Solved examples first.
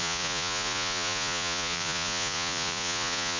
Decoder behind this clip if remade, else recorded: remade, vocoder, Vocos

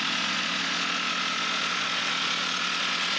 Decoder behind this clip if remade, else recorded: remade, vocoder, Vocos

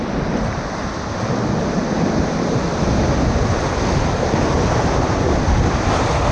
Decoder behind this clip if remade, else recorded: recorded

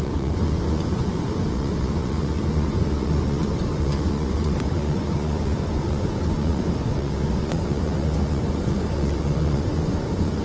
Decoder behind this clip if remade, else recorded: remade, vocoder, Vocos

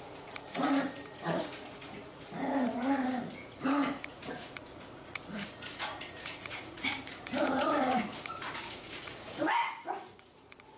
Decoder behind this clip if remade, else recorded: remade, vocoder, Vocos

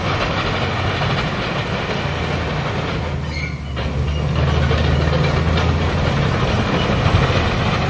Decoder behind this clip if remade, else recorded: recorded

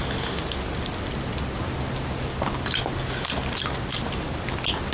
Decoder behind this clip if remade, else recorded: recorded